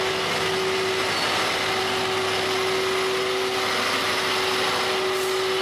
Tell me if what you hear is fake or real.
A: real